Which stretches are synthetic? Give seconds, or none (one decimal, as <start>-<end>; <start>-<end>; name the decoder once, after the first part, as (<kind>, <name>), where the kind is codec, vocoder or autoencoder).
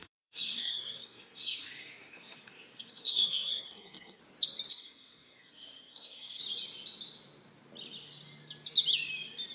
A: 0.0-4.2 (codec, SNAC); 4.7-6.4